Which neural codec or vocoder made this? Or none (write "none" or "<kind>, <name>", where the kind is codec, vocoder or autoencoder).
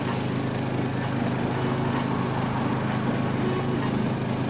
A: none